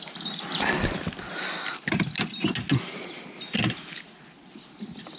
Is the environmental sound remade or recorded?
recorded